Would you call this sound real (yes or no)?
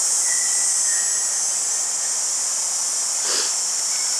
yes